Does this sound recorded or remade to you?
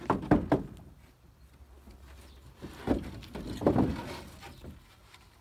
recorded